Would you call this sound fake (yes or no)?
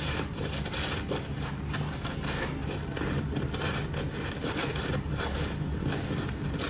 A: no